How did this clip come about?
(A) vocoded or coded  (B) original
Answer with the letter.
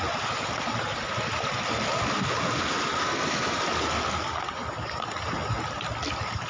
B